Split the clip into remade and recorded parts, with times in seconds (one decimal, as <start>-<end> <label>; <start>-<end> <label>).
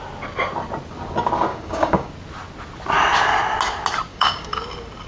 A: 0.0-1.5 recorded; 1.5-2.1 remade; 2.1-4.1 recorded; 4.1-4.6 remade; 4.6-5.1 recorded